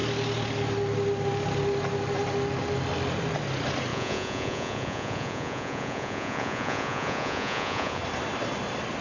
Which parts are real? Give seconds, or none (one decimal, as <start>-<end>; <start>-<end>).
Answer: 0.0-3.9; 8.0-9.0